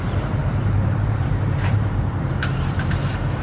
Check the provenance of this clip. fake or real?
fake